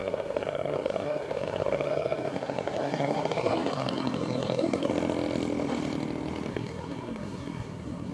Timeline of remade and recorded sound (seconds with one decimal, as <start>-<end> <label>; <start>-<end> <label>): 0.0-4.9 remade; 4.9-6.5 recorded; 6.5-8.1 remade